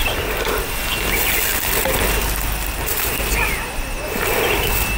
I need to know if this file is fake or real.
real